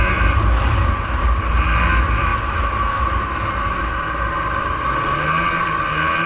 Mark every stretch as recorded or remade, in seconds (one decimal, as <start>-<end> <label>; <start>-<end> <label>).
0.0-6.3 recorded